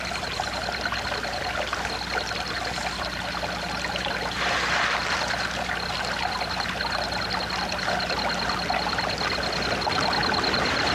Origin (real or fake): real